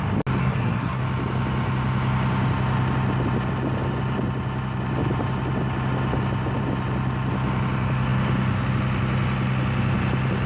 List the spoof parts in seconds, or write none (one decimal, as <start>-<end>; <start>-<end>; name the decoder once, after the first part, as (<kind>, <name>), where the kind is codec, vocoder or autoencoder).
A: 0.4-1.0 (codec, SNAC)